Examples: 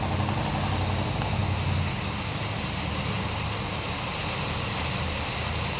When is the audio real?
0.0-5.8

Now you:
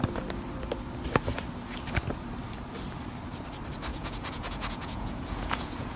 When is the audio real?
0.0-3.9

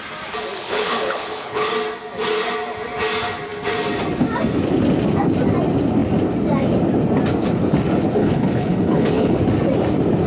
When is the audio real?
0.0-0.6; 1.7-8.2; 9.4-10.3

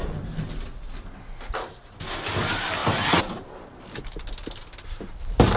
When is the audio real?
0.0-5.6

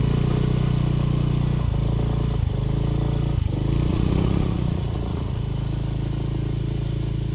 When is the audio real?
0.0-3.9; 5.4-7.3